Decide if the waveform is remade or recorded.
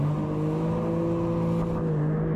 recorded